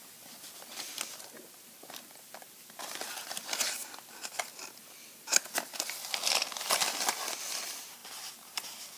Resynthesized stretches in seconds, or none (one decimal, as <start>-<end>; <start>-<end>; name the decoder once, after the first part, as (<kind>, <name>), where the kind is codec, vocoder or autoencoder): none